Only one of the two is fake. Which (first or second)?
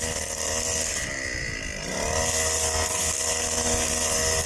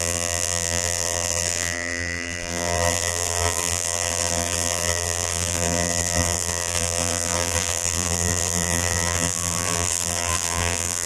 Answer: second